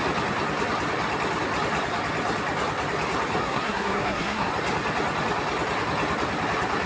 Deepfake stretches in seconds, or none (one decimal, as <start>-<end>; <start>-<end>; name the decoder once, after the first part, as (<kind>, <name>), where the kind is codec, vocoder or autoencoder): 3.4-4.5 (codec, SNAC)